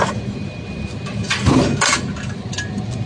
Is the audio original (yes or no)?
yes